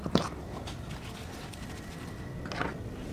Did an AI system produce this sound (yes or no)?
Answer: no